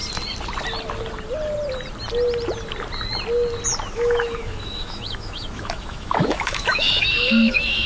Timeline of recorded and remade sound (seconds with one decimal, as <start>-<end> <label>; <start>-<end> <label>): 0.0-3.9 recorded; 3.9-7.9 remade